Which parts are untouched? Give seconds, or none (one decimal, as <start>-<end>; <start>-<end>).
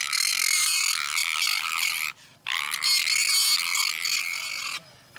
0.0-1.2; 2.6-5.2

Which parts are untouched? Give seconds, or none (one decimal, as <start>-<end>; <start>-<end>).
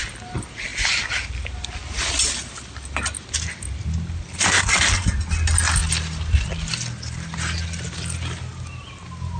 0.0-9.4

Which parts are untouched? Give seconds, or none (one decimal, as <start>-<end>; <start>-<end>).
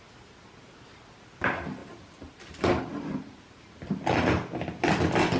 0.0-1.8; 5.0-5.4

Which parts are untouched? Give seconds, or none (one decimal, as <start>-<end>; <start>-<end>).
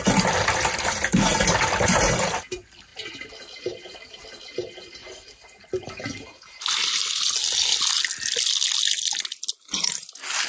0.0-10.5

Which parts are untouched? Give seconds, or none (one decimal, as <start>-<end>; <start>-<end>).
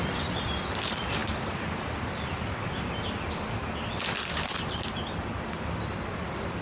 none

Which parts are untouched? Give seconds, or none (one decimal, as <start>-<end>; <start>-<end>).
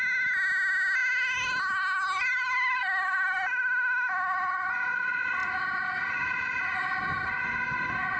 0.0-8.2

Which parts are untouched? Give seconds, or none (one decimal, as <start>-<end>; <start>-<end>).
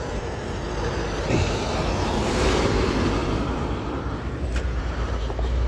none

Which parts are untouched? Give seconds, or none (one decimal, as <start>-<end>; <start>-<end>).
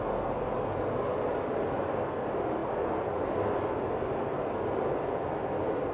0.0-5.9